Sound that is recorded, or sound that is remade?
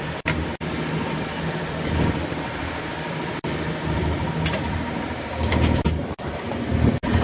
remade